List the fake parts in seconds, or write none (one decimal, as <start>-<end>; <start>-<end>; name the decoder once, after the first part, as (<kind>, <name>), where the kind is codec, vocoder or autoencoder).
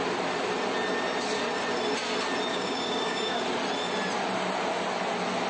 2.5-3.4 (codec, DAC)